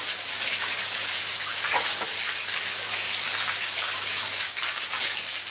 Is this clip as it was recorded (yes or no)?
no